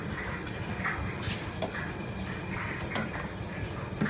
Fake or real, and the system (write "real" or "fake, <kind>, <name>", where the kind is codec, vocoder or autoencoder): real